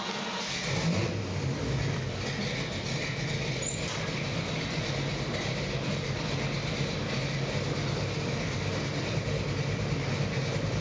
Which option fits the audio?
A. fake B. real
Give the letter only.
B